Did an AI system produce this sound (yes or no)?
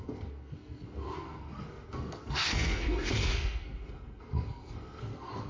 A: yes